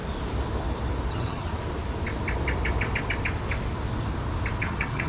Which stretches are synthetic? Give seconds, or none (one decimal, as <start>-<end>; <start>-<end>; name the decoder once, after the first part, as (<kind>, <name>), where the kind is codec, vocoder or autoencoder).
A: 1.1-1.5 (vocoder, HiFi-GAN); 4.6-5.1